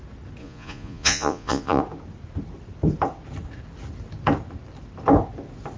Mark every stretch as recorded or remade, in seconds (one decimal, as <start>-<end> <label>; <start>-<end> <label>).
0.0-0.4 recorded; 0.4-1.8 remade; 1.8-5.8 recorded